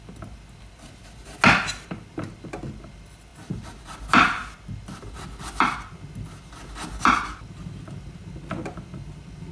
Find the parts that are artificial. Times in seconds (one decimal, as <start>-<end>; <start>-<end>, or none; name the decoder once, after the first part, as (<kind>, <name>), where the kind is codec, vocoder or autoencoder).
none